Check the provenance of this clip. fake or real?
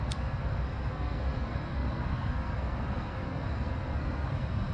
fake